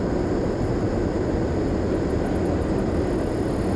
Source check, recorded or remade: recorded